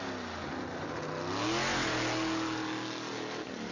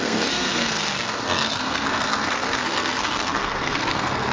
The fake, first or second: second